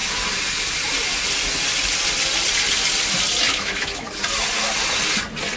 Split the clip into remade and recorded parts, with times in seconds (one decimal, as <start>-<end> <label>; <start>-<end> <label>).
0.0-3.5 recorded; 3.5-4.1 remade; 4.1-5.6 recorded